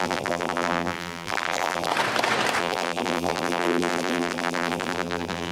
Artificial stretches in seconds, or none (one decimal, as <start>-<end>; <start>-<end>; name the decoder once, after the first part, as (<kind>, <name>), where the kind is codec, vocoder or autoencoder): 0.0-1.9 (vocoder, BigVGAN v2); 2.6-5.5